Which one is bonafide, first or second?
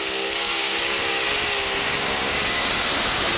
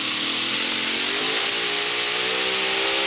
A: second